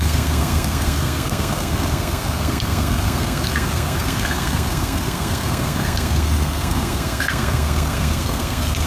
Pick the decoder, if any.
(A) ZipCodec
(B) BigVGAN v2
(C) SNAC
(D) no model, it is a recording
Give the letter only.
C